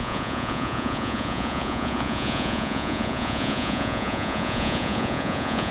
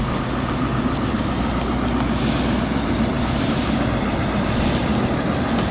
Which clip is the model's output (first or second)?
first